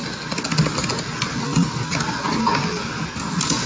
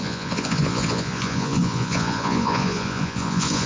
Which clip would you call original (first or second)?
first